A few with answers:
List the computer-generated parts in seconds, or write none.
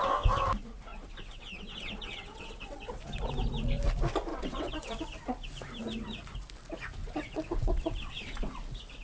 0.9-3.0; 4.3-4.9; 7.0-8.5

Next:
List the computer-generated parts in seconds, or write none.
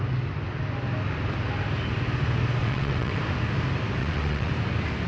2.6-3.2; 4.0-4.5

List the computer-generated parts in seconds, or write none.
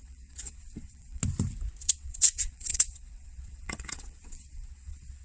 0.0-1.2; 1.8-5.2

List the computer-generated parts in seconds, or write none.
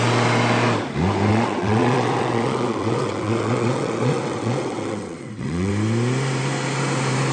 1.3-5.7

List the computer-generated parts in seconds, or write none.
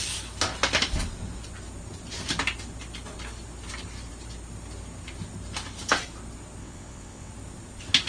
6.6-7.3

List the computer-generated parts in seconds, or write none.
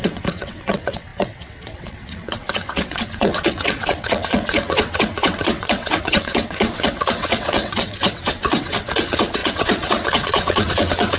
0.0-11.2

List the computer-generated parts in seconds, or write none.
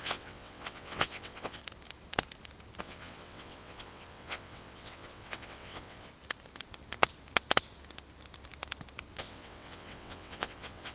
0.0-1.6; 2.8-6.1; 9.2-10.9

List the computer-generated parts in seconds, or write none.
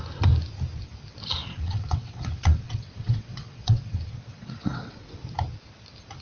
1.4-5.1